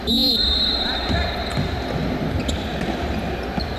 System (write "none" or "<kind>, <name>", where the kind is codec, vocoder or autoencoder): none